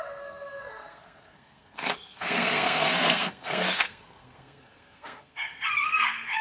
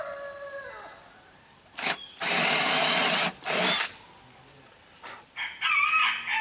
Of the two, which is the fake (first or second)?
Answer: first